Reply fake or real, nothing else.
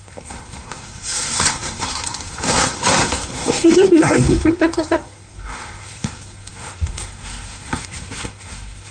fake